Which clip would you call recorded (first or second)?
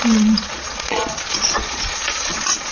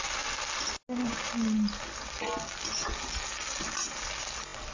second